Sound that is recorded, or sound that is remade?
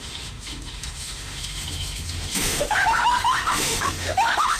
remade